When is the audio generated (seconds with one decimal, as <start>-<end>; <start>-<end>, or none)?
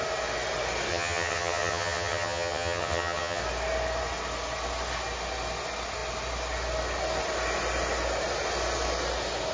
0.9-3.4